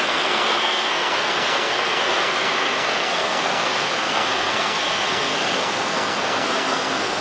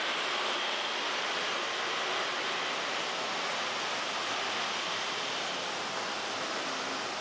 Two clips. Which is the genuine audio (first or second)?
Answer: second